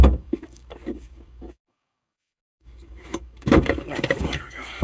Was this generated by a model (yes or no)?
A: yes